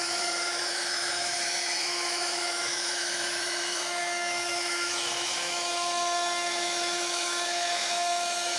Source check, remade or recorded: remade